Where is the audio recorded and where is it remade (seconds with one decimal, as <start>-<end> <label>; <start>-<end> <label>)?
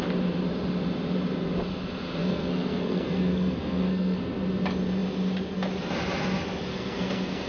0.0-2.2 recorded; 2.2-4.2 remade; 4.2-6.7 recorded; 6.7-7.5 remade